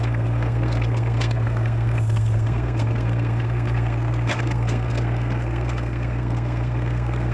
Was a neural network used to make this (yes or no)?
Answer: yes